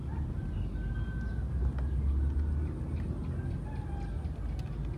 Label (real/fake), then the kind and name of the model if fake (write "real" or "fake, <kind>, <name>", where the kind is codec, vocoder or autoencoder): real